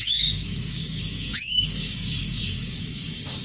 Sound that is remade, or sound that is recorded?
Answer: remade